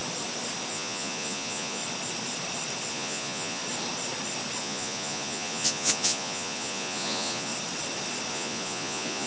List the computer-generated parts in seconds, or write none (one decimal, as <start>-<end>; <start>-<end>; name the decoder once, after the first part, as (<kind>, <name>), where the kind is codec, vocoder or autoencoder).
0.7-1.8 (vocoder, Vocos); 2.9-3.6; 4.6-7.5; 8.3-9.3